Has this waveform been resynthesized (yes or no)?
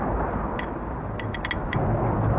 no